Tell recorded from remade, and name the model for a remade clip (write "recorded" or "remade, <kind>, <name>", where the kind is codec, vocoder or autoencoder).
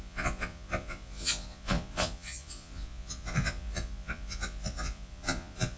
remade, vocoder, Vocos